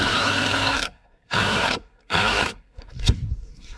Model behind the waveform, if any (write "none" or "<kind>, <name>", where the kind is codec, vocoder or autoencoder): codec, SNAC